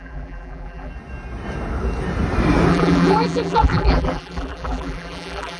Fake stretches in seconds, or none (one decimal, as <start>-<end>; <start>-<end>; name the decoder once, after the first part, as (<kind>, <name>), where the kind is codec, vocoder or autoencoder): 0.0-0.9 (vocoder, BigVGAN v2); 2.7-5.6